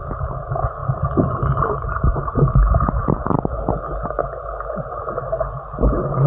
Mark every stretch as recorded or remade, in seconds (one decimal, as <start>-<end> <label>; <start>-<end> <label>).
0.0-6.3 recorded